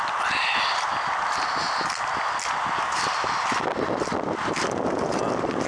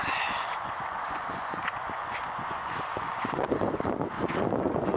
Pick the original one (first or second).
first